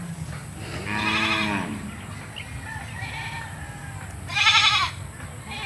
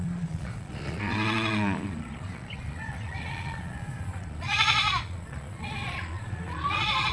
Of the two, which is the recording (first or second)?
first